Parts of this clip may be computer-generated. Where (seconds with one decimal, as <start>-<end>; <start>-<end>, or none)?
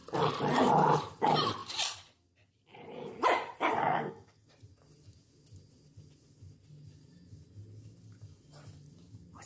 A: 3.8-4.5